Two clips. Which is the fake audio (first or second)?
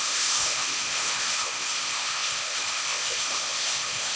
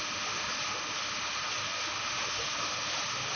first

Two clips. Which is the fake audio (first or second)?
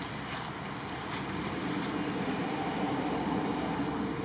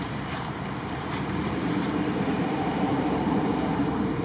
second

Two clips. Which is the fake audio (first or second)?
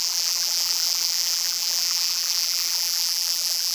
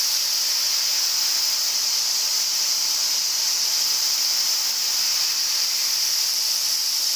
first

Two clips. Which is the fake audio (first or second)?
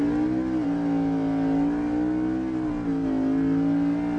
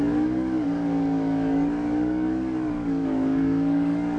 second